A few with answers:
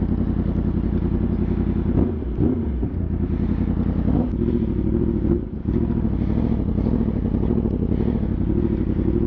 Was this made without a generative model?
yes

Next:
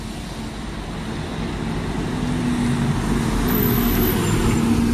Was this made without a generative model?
yes